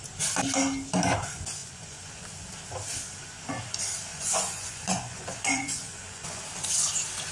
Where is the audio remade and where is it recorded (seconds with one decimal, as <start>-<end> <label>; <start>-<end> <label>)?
0.0-1.6 recorded; 1.6-2.3 remade; 2.3-4.1 recorded; 4.1-6.4 remade; 6.4-7.3 recorded